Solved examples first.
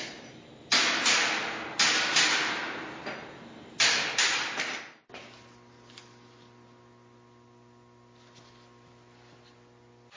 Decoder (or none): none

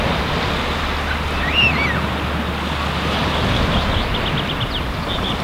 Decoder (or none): none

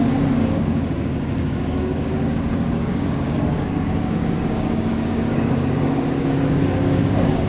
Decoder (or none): codec, DAC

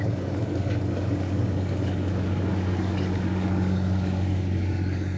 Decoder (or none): codec, DAC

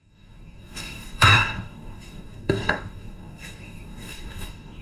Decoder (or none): codec, DAC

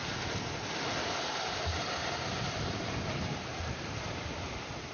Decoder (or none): none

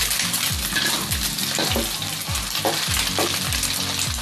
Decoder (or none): none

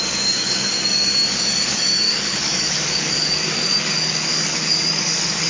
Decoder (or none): codec, DAC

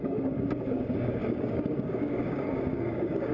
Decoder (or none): codec, DAC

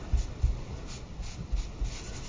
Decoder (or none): none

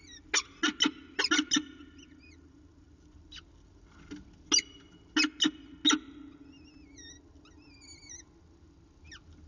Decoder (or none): none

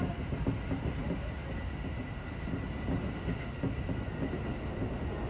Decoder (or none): none